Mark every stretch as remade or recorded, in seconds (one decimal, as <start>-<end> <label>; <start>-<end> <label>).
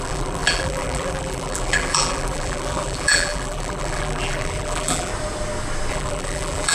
0.0-5.1 remade; 5.1-5.9 recorded; 5.9-6.7 remade